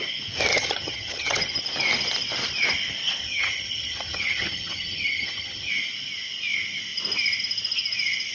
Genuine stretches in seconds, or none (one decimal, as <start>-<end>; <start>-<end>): 0.0-0.5; 1.6-3.2; 5.7-8.3